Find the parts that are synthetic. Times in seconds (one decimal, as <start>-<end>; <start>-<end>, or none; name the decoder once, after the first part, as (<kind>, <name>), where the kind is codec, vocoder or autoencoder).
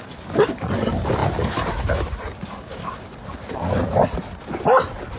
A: none